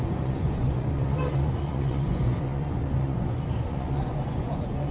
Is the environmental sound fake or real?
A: fake